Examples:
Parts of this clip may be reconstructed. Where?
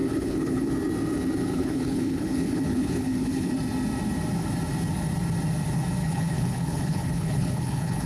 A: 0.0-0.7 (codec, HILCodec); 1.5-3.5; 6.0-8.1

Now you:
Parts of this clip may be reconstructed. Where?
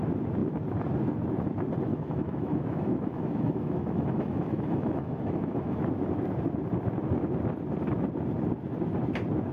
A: 1.9-5.8 (autoencoder, DAC-VAE)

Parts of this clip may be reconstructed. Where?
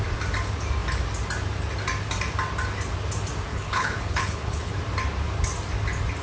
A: 3.5-4.8 (codec, HILCodec)